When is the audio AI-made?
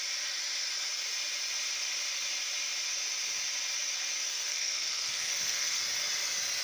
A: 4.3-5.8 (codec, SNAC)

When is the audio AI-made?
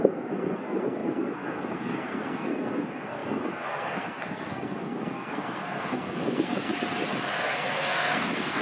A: 0.0-6.7 (codec, SNAC); 7.4-8.6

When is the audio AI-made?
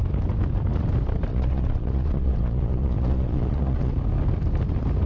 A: 1.3-3.9 (vocoder, Vocos)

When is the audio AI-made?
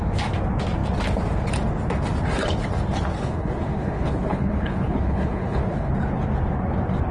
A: 3.2-5.9 (codec, HILCodec)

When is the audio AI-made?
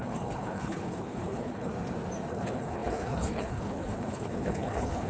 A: 0.0-1.7 (codec, HILCodec); 2.3-5.1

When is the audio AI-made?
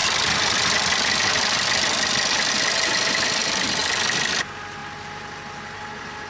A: none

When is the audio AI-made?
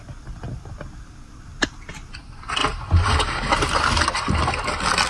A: 2.6-3.5 (vocoder, BigVGAN v2)